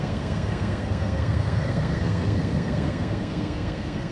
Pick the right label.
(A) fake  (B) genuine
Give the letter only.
A